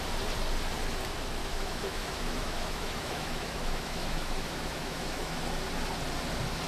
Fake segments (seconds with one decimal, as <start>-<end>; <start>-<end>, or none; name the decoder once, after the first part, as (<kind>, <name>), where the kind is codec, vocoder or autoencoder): 1.4-5.4 (autoencoder, DAC-VAE)